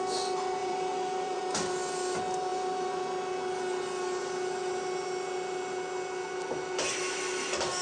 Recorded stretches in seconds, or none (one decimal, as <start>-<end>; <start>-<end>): 0.0-0.6; 1.4-7.8